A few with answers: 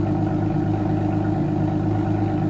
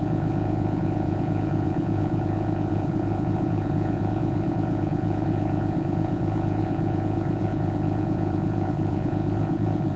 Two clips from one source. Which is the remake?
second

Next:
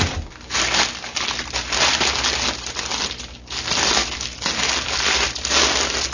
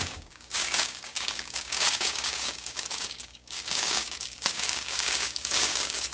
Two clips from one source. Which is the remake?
second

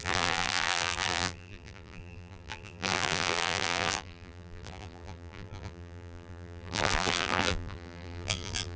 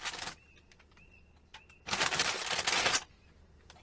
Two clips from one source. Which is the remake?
first